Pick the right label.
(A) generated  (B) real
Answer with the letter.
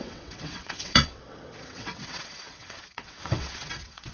A